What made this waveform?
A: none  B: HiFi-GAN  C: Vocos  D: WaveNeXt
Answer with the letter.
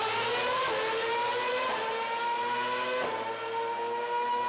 A